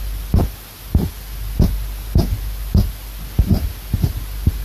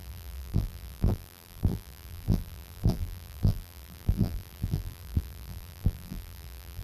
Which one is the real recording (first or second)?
first